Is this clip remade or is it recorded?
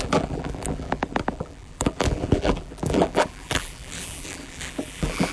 remade